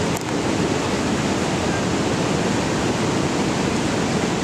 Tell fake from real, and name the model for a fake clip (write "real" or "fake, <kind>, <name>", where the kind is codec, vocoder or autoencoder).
real